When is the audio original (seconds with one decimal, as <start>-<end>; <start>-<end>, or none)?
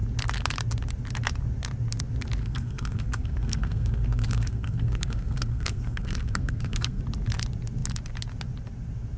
0.0-2.4; 7.0-9.2